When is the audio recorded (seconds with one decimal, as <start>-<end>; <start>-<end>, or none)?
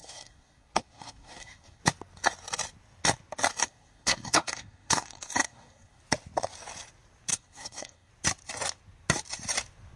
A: 1.8-3.6; 6.0-7.3; 8.1-10.0